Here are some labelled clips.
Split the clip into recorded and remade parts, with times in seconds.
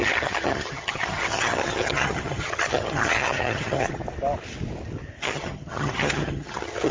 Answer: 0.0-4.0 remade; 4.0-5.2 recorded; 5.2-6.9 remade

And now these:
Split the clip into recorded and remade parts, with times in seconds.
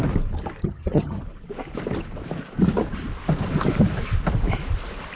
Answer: 0.0-0.6 recorded; 0.6-1.2 remade; 1.2-5.2 recorded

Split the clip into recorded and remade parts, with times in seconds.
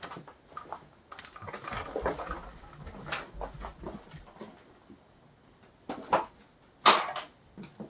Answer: 0.0-7.9 recorded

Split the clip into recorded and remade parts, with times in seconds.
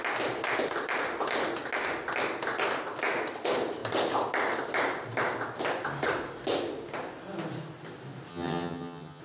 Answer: 0.0-8.3 recorded; 8.3-9.2 remade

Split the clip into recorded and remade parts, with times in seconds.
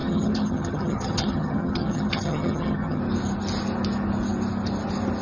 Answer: 0.0-3.0 remade; 3.0-5.2 recorded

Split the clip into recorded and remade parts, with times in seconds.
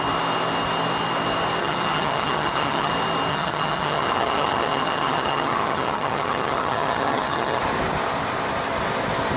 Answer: 0.0-1.6 recorded; 1.6-2.9 remade; 2.9-3.3 recorded; 3.3-7.6 remade; 7.6-9.4 recorded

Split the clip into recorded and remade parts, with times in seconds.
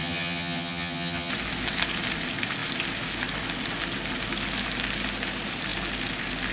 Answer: 0.0-1.3 remade; 1.3-6.5 recorded